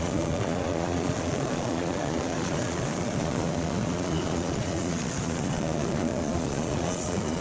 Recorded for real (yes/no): no